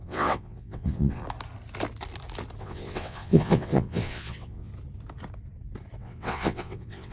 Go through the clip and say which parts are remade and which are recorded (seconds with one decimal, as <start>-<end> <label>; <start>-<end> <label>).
0.0-1.2 remade; 1.2-2.6 recorded; 2.6-4.7 remade; 4.7-6.0 recorded; 6.0-7.1 remade